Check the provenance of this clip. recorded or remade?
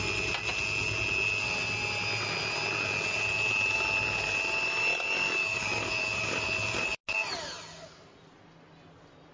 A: recorded